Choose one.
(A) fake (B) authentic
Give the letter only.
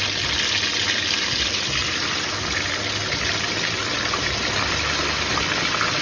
B